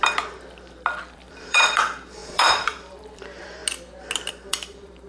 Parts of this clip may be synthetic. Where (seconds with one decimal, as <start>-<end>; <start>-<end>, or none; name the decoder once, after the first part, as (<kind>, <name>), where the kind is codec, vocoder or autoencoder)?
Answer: 1.0-3.6 (vocoder, BigVGAN v2); 4.3-5.1